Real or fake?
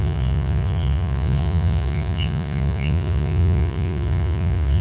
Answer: fake